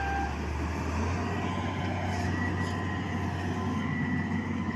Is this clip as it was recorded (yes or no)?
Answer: yes